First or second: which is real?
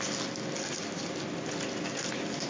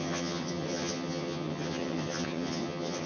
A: first